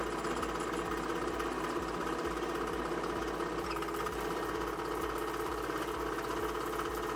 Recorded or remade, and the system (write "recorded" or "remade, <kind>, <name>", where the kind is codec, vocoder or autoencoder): recorded